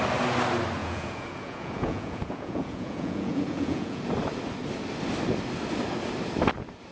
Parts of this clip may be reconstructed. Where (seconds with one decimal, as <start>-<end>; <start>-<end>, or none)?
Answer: 0.8-4.0